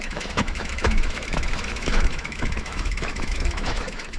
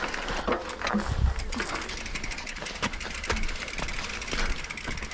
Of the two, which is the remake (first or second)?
first